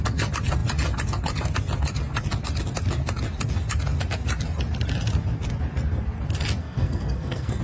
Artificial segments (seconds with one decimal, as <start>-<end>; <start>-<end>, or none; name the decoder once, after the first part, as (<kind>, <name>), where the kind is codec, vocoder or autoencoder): 6.6-7.6 (codec, SNAC)